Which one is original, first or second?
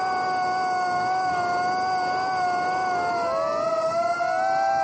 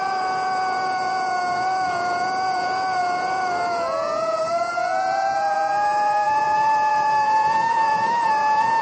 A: first